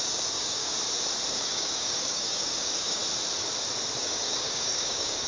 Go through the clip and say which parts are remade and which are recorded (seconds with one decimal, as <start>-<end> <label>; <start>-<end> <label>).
0.0-0.7 remade; 0.7-1.3 recorded; 1.3-3.0 remade; 3.0-4.0 recorded; 4.0-5.3 remade